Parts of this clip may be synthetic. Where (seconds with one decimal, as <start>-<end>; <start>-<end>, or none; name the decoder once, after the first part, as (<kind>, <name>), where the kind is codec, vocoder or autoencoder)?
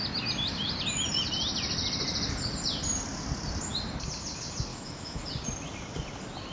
4.7-5.2 (autoencoder, DAC-VAE)